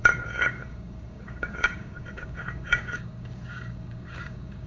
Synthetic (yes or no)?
yes